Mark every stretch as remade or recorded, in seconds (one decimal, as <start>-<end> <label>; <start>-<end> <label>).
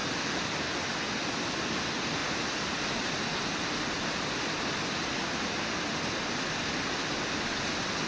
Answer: 0.0-8.1 recorded